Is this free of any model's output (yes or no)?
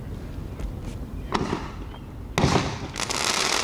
yes